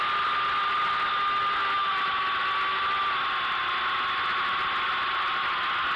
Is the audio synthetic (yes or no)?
no